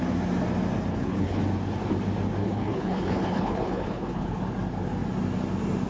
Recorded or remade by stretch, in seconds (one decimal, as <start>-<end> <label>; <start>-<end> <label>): 0.0-0.9 recorded; 0.9-1.4 remade; 1.4-2.4 recorded; 2.4-4.4 remade; 4.4-5.9 recorded